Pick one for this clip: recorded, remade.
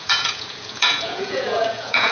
remade